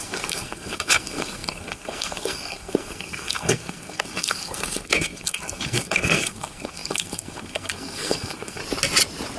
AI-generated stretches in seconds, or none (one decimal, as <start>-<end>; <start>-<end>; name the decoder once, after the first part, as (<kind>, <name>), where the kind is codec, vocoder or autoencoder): 0.0-8.6 (codec, SNAC)